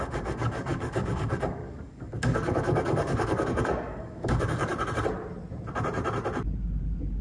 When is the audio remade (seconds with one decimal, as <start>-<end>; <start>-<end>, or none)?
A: 0.0-4.7